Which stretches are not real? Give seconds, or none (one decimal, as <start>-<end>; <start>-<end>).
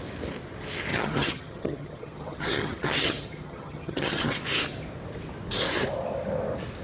0.9-4.4